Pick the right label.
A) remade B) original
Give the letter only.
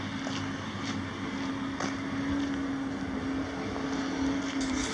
B